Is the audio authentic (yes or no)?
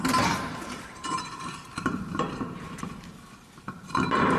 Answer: no